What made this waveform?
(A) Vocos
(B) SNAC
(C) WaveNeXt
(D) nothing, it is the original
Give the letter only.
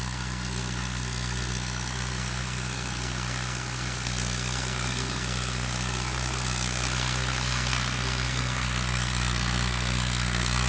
B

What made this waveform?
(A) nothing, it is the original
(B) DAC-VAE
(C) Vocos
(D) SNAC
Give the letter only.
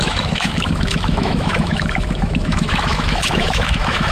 B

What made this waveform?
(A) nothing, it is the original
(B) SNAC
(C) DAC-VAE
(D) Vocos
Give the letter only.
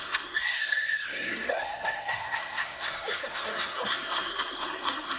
B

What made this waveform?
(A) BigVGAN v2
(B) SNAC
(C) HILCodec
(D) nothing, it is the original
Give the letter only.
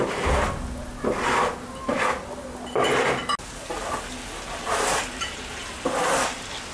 D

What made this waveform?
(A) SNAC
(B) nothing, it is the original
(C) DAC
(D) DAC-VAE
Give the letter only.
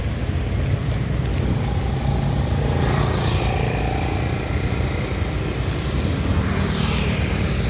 B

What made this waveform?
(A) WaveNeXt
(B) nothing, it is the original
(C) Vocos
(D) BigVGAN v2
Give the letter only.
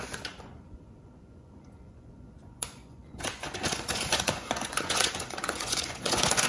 C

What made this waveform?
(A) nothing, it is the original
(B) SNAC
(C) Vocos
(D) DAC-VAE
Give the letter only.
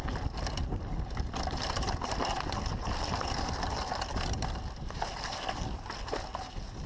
A